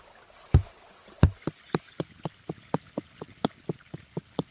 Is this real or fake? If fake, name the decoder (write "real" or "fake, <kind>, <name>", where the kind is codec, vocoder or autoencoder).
real